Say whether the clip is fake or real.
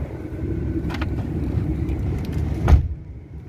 fake